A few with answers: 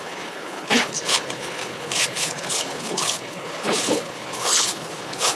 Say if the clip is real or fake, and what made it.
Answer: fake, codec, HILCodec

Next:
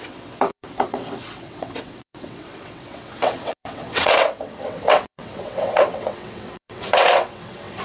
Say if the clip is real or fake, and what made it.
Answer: fake, vocoder, WaveNeXt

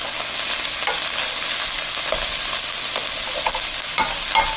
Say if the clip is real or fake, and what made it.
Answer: real